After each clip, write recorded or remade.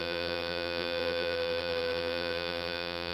remade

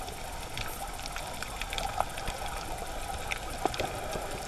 recorded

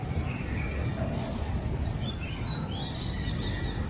remade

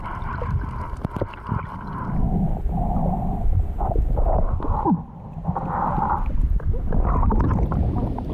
remade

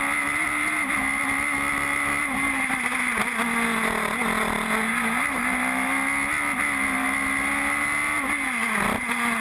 recorded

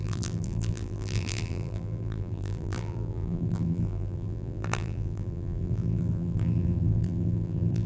remade